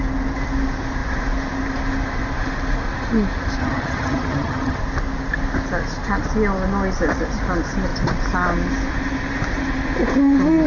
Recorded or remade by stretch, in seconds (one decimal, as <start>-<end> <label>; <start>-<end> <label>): 0.0-3.6 recorded; 3.6-4.8 remade; 4.8-10.7 recorded